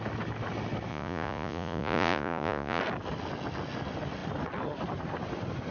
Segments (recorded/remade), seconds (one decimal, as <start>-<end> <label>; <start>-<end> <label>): 0.0-0.9 recorded; 0.9-2.8 remade; 2.8-5.7 recorded